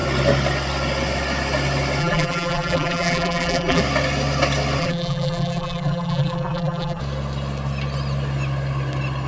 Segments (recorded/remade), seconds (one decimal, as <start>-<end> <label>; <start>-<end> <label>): 0.0-2.0 recorded; 2.0-3.8 remade; 3.8-4.8 recorded; 4.8-7.0 remade; 7.0-9.3 recorded